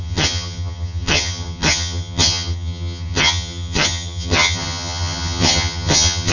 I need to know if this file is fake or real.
fake